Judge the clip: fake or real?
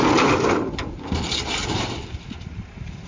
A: fake